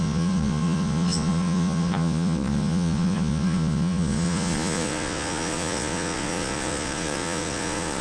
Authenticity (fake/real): fake